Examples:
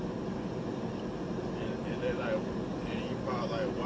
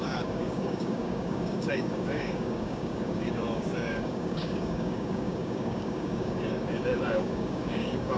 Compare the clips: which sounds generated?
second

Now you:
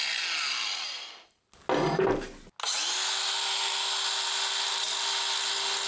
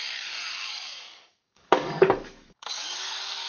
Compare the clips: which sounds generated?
second